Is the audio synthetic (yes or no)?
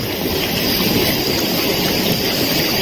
yes